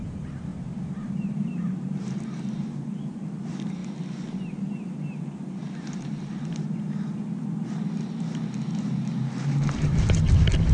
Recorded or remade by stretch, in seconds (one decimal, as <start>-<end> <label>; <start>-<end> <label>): 0.0-3.8 remade; 3.8-5.7 recorded; 5.7-7.2 remade; 7.2-8.8 recorded; 8.8-10.7 remade